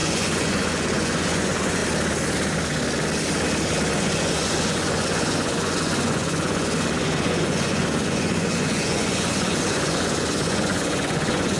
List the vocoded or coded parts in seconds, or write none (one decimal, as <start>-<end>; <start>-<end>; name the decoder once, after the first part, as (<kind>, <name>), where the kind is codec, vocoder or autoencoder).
0.0-1.8 (vocoder, Vocos); 4.0-11.6